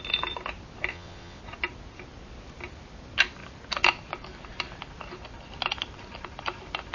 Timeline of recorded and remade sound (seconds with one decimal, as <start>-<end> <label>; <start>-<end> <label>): 0.0-0.9 recorded; 0.9-1.4 remade; 1.4-6.9 recorded